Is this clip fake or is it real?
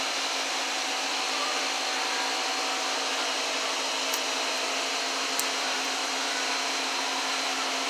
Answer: real